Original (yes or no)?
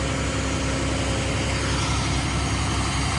yes